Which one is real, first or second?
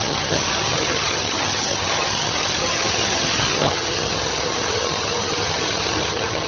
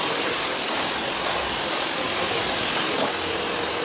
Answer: second